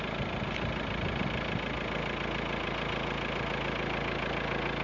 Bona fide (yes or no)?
yes